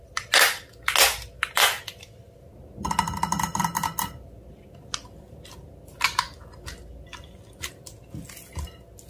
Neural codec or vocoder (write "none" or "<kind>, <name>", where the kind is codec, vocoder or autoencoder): none